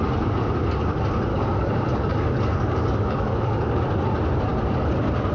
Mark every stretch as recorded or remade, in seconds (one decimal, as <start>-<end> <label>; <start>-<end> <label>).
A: 0.0-1.3 recorded; 1.3-3.8 remade; 3.8-5.3 recorded